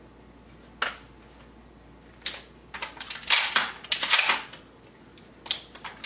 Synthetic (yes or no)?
no